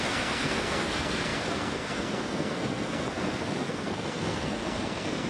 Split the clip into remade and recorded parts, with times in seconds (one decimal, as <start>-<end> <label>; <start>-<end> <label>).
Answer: 0.0-5.3 remade